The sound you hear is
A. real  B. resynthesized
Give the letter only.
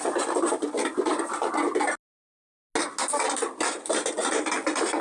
A